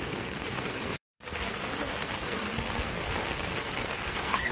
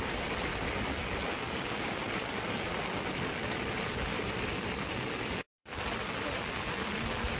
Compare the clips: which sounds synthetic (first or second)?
first